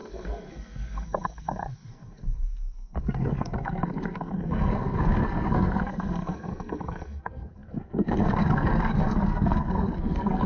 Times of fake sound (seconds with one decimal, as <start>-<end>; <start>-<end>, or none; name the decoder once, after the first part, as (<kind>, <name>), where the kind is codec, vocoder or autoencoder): 0.0-10.5 (codec, SNAC)